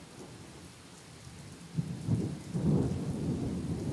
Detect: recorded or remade recorded